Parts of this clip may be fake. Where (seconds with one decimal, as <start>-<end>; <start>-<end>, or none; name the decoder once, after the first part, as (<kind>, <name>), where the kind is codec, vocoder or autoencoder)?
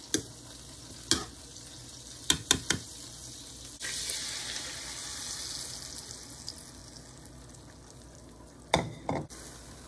none